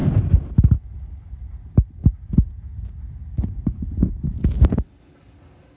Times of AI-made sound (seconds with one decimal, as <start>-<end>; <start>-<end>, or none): none